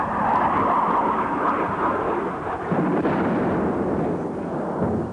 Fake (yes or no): no